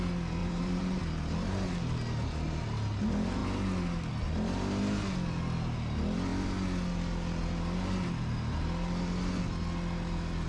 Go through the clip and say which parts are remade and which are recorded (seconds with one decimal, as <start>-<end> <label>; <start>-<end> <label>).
0.0-0.4 recorded; 0.4-1.0 remade; 1.0-10.5 recorded